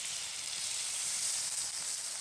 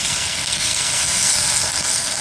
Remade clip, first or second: second